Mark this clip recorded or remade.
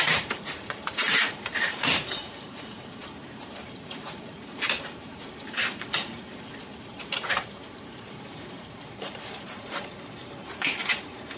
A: remade